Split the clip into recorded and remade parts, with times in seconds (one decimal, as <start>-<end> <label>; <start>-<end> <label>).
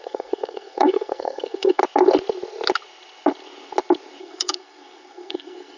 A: 0.0-1.8 remade; 1.8-4.2 recorded; 4.2-5.8 remade